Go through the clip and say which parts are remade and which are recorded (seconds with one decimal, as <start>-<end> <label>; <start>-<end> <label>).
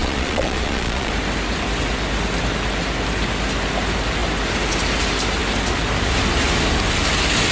0.0-1.1 remade; 1.1-7.5 recorded